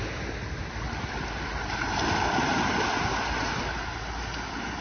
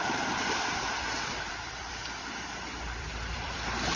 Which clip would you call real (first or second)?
first